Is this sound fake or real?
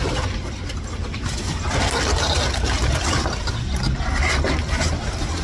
real